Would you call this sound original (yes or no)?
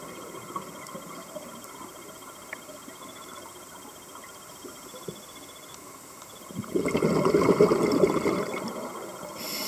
yes